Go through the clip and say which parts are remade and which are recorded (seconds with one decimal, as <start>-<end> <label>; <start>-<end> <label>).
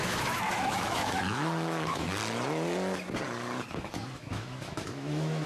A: 0.0-2.2 remade; 2.2-3.8 recorded; 3.8-5.5 remade